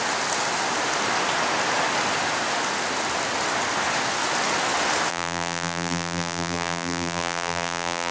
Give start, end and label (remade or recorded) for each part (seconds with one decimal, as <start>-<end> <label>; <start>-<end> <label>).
0.0-5.1 recorded; 5.1-8.1 remade